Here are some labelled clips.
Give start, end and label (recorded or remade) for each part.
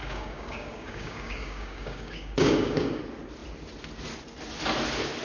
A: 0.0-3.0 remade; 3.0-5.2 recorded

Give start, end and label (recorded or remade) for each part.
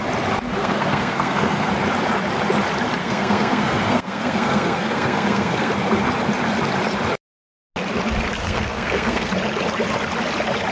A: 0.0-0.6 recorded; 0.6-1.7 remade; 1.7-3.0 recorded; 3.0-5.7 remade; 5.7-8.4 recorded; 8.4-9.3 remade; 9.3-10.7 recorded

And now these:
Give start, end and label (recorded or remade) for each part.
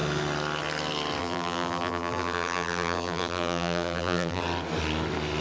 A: 0.0-1.2 recorded; 1.2-4.4 remade; 4.4-5.4 recorded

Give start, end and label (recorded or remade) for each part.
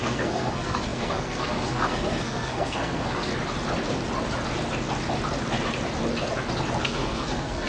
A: 0.0-3.3 remade; 3.3-6.8 recorded; 6.8-7.7 remade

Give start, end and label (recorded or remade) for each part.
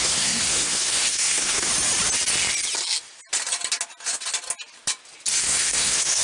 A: 0.0-1.7 remade; 1.7-5.4 recorded; 5.4-6.2 remade